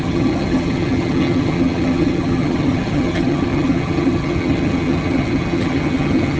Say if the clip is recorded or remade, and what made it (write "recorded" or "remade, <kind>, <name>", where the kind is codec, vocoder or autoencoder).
remade, vocoder, HiFi-GAN